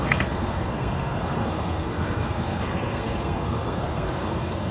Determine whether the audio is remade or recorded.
remade